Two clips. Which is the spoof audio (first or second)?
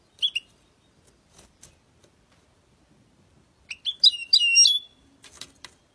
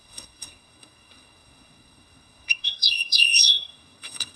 second